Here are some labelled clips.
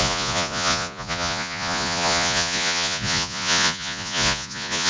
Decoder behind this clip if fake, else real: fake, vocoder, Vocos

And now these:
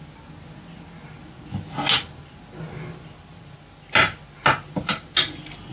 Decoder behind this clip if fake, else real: real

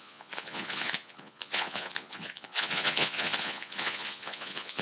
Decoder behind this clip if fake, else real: fake, vocoder, Vocos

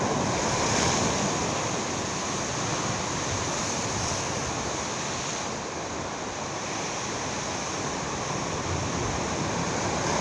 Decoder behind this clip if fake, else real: real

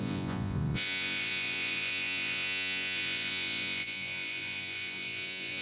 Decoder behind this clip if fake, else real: fake, vocoder, Vocos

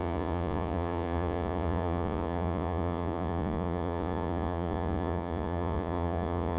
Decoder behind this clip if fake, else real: fake, vocoder, Vocos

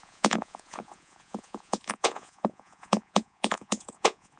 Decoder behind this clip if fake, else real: fake, vocoder, Vocos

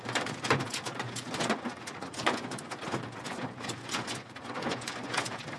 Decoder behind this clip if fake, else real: fake, vocoder, Vocos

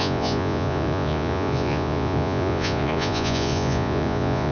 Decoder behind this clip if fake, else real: fake, vocoder, Vocos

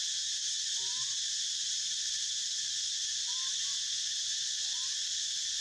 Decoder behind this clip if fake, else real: real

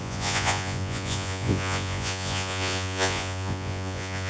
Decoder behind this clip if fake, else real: fake, vocoder, Vocos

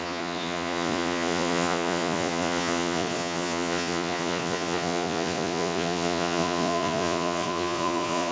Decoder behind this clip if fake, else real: fake, vocoder, Vocos